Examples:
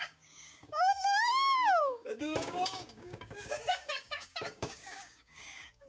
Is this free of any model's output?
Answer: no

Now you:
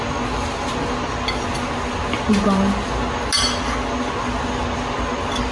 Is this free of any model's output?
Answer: yes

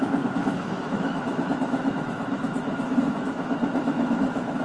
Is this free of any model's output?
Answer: no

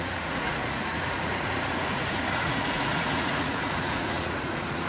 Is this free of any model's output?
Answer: no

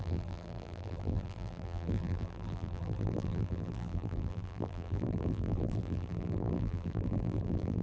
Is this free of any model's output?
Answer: no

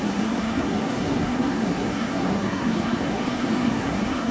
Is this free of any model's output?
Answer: no